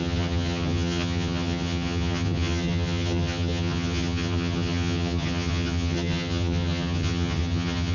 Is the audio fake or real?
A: fake